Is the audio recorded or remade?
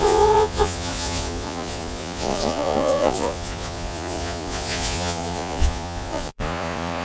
remade